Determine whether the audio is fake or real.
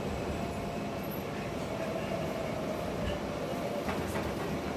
fake